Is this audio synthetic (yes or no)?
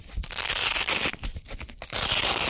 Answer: no